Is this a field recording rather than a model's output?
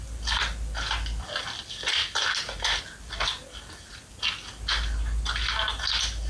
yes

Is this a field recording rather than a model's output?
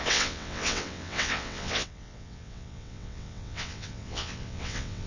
no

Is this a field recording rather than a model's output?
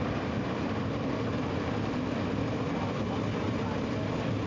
yes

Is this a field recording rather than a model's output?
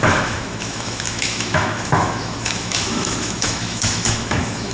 no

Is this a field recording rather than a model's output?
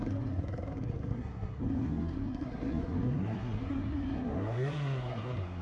no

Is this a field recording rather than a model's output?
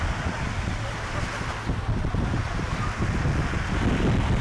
yes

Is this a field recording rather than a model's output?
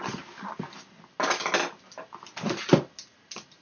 yes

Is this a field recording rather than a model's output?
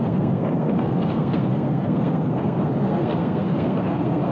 no